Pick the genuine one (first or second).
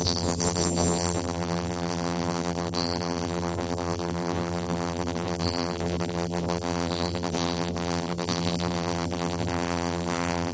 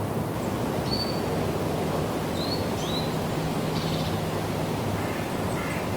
second